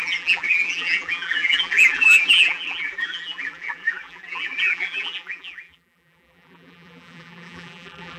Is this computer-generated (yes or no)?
yes